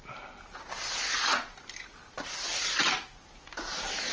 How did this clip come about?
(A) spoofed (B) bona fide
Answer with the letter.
B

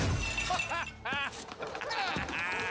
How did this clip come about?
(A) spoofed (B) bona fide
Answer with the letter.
B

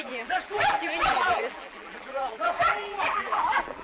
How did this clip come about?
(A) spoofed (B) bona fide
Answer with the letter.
A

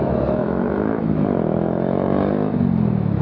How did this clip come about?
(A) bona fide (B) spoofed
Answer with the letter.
B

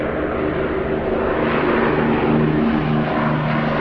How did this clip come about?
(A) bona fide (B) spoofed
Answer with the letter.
A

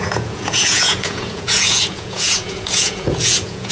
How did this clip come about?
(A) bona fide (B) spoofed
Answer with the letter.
B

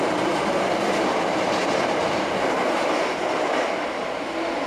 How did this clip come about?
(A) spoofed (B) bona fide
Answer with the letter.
B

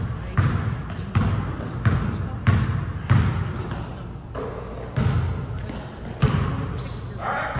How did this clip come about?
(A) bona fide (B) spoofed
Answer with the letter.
A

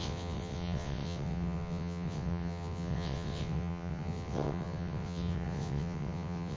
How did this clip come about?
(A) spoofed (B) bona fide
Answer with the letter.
A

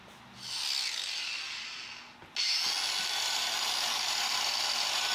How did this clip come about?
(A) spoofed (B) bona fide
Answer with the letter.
B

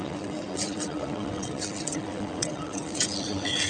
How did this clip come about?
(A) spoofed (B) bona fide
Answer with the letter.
A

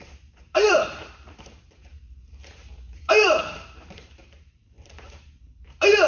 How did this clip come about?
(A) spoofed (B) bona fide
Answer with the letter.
A